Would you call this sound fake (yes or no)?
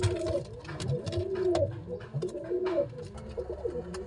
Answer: no